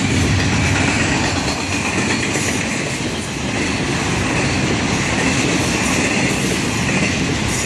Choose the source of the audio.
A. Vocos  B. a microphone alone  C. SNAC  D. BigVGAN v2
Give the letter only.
B